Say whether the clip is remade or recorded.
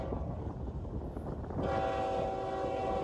recorded